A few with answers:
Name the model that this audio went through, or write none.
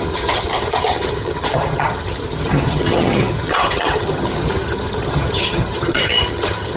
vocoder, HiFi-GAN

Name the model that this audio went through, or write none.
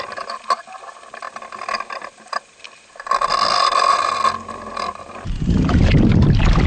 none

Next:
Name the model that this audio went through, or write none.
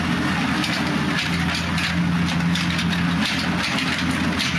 none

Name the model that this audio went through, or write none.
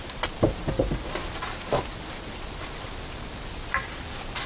none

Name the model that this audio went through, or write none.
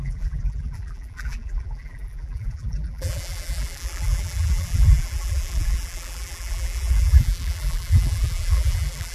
vocoder, BigVGAN v2